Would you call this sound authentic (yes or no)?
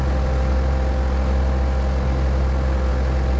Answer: yes